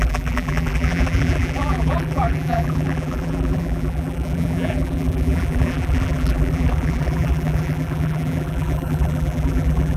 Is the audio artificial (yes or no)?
yes